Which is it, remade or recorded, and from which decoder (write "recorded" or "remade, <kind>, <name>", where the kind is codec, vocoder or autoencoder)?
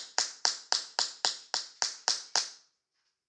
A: recorded